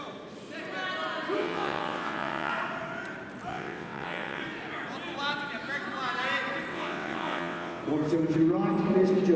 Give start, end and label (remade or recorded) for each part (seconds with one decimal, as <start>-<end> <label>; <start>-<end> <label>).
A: 0.0-1.4 recorded; 1.4-2.5 remade; 2.5-3.5 recorded; 3.5-4.4 remade; 4.4-6.7 recorded; 6.7-7.8 remade; 7.8-9.4 recorded